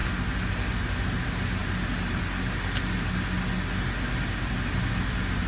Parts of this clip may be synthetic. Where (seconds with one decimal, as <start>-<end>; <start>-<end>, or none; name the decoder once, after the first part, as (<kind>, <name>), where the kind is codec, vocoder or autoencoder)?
none